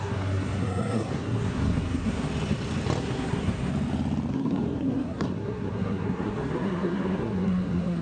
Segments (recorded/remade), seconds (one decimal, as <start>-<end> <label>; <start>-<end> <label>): 0.0-2.3 remade; 2.3-3.0 recorded; 3.0-3.7 remade; 3.7-4.3 recorded; 4.3-8.0 remade